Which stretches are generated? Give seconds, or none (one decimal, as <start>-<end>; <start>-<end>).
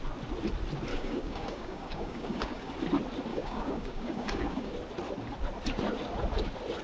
0.9-2.7; 3.3-4.7